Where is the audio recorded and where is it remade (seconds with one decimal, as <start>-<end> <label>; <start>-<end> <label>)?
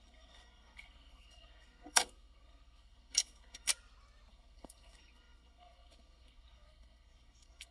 0.0-3.7 remade; 3.7-4.3 recorded; 4.3-7.7 remade